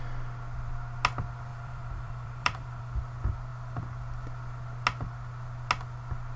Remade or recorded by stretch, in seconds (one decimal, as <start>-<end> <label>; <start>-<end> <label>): 0.0-1.5 recorded; 1.5-2.8 remade; 2.8-6.4 recorded